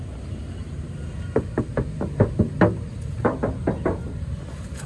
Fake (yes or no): no